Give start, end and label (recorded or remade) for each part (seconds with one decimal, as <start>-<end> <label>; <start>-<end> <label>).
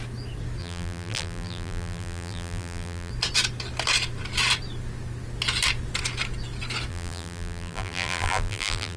0.0-0.6 recorded; 0.6-3.1 remade; 3.1-6.9 recorded; 6.9-9.0 remade